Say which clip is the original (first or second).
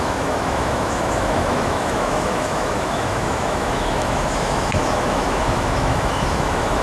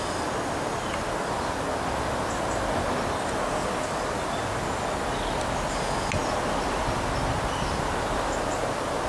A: second